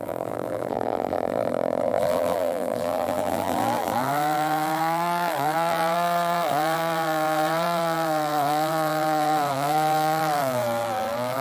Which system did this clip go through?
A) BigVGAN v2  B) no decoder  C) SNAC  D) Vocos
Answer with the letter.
A